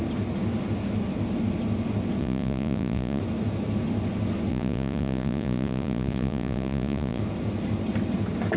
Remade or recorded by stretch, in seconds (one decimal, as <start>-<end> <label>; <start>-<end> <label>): 0.0-2.2 recorded; 2.2-3.2 remade; 3.2-4.5 recorded; 4.5-7.2 remade; 7.2-8.6 recorded